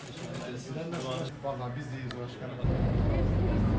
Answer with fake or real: real